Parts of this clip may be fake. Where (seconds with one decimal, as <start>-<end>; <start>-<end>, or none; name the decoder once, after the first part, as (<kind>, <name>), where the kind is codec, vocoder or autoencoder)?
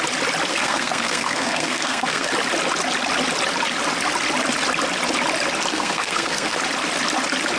0.5-2.3 (codec, SNAC); 5.7-6.6